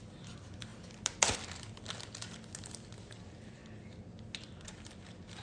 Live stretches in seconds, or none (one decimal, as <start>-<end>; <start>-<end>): 0.0-5.4